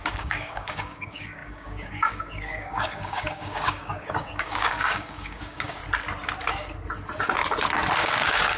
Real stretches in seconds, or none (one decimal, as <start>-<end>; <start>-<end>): 5.8-8.0

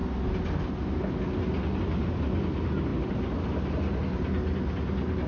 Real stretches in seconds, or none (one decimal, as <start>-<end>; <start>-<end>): 0.0-5.3

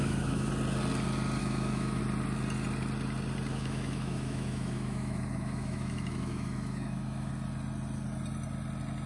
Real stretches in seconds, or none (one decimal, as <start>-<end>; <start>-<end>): 0.5-1.4; 2.0-3.5; 7.3-9.1

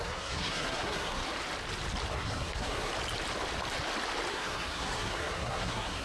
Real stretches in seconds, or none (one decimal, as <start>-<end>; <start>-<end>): 1.2-2.1; 2.9-4.3